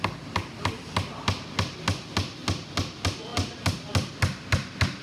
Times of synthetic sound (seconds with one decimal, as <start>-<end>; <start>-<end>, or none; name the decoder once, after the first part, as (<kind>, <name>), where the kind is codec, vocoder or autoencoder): none